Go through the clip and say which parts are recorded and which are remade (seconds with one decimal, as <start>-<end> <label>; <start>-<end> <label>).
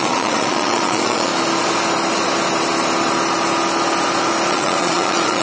0.0-1.3 remade; 1.3-4.5 recorded; 4.5-5.4 remade